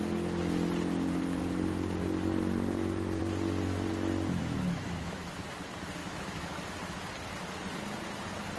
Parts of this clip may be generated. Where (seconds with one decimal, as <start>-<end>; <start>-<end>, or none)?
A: 4.4-5.3; 6.0-6.6